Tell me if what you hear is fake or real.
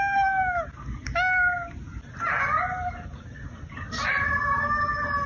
real